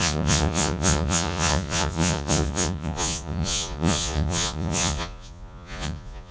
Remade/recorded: remade